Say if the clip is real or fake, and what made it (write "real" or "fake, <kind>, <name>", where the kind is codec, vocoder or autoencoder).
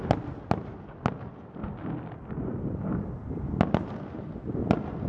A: real